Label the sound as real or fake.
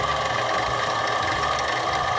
real